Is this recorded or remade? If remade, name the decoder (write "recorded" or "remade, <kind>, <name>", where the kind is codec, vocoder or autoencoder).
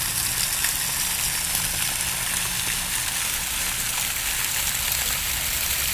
recorded